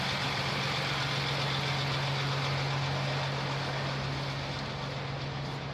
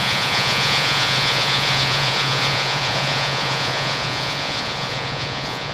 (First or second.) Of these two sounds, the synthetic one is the second